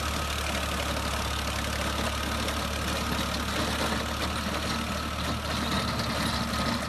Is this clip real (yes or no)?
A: yes